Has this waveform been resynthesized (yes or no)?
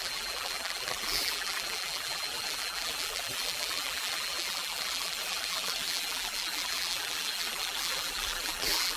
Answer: yes